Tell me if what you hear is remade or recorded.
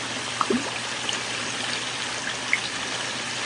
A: recorded